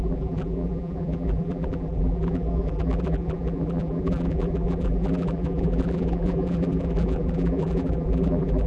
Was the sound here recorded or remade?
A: remade